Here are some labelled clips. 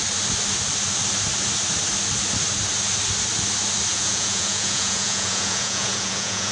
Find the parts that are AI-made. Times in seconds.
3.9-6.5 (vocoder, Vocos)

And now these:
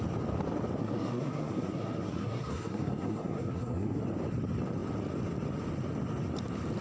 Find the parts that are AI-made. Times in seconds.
0.8-4.0 (codec, SNAC)

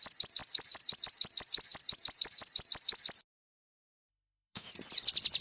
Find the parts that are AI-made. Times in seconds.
4.1-4.7 (autoencoder, DAC-VAE)